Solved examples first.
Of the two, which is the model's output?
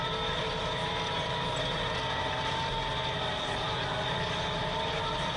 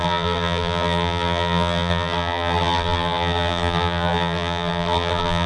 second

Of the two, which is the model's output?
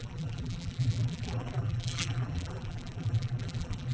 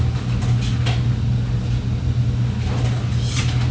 first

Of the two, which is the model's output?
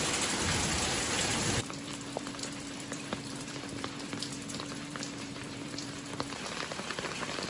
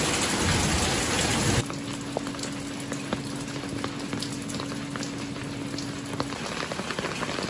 first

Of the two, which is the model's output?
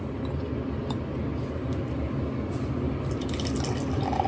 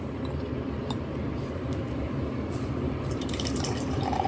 second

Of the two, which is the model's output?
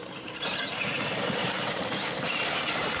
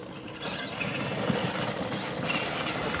first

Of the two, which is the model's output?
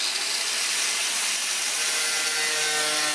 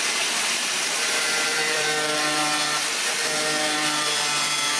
second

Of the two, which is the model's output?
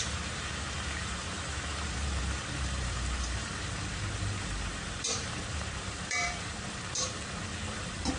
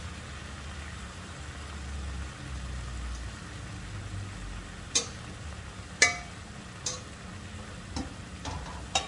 first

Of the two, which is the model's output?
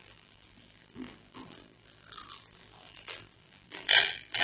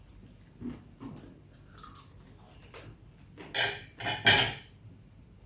first